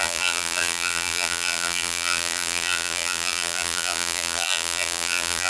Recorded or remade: remade